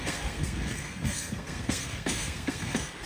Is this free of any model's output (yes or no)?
no